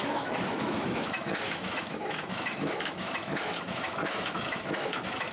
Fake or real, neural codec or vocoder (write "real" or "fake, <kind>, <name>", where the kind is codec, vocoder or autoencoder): fake, autoencoder, DAC-VAE